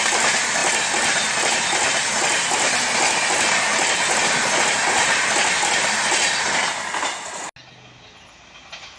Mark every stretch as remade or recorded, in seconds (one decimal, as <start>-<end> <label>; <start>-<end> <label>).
0.0-9.0 recorded